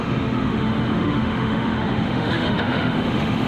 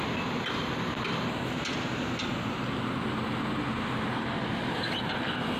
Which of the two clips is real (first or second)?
second